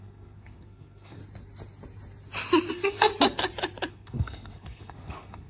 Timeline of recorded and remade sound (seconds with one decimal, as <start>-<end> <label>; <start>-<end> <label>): 0.0-1.2 remade; 1.2-2.7 recorded; 2.7-3.1 remade; 3.1-3.9 recorded; 3.9-5.5 remade